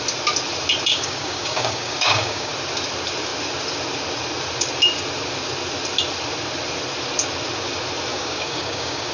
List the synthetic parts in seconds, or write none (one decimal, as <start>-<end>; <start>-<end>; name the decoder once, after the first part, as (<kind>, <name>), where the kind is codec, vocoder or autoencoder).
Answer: 0.9-2.5 (codec, DAC); 8.1-9.1